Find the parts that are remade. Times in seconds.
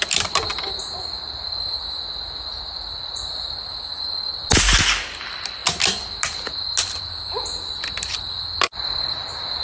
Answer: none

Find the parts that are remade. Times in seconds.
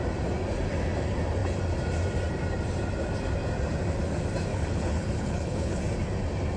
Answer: 4.5-5.8